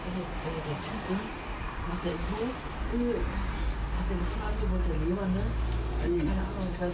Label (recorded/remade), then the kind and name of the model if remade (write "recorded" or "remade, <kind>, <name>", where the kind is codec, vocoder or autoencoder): recorded